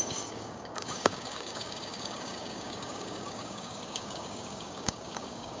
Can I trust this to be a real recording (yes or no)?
no